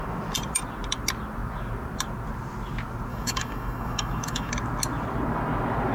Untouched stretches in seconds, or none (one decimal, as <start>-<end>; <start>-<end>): 0.0-3.1; 4.5-5.9

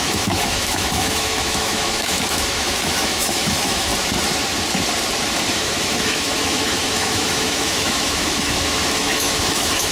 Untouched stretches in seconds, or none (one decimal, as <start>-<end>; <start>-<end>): 3.9-5.5

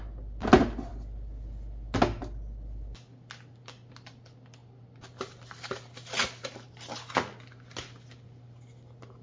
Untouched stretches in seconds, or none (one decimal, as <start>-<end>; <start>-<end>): 0.0-9.2

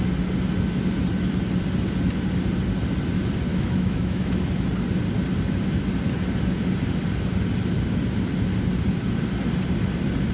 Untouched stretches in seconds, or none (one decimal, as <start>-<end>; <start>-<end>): 0.0-3.5; 4.5-10.3

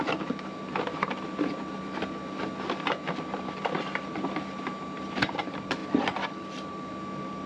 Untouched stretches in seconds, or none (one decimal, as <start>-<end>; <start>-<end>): 0.0-7.5

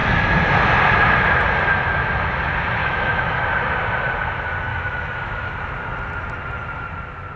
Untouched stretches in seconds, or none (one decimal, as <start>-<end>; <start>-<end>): 0.0-2.8; 3.4-4.7; 5.5-7.4